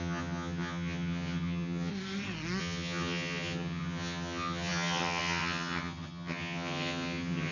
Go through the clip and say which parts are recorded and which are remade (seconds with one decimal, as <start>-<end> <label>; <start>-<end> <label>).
0.0-1.9 remade; 1.9-2.6 recorded; 2.6-7.5 remade